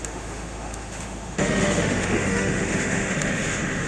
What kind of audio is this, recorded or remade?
remade